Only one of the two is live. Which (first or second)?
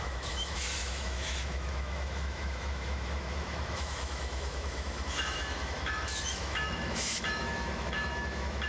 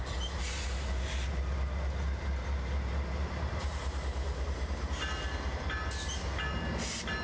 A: second